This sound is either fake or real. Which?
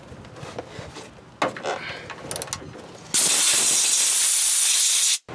real